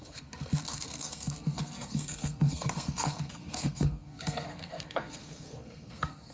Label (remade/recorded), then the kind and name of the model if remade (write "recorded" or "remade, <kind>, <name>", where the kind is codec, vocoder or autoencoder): remade, codec, SNAC